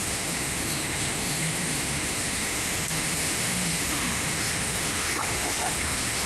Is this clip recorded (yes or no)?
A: no